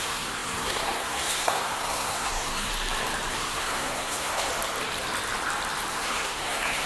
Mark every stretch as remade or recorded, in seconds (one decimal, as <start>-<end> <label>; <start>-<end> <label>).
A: 0.0-2.7 remade; 2.7-3.3 recorded; 3.3-4.5 remade; 4.5-5.9 recorded; 5.9-6.9 remade